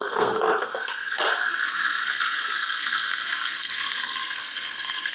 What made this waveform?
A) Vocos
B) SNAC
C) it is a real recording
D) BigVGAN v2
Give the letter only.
B